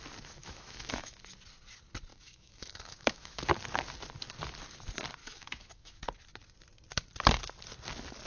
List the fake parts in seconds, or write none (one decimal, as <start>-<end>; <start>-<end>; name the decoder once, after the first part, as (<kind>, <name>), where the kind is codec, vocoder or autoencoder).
0.4-1.2 (autoencoder, DAC-VAE); 2.1-3.4; 5.2-6.0